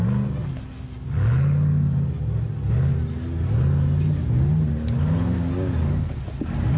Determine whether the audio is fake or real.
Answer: real